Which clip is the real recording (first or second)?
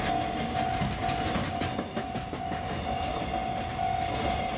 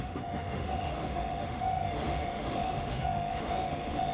first